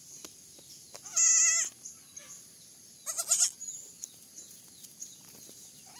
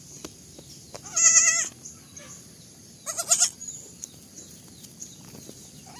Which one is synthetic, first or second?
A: second